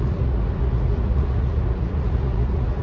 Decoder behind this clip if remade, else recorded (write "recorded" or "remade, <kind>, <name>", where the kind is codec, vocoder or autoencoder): remade, vocoder, Vocos